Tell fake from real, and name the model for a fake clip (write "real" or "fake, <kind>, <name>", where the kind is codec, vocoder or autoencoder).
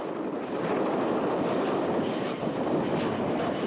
real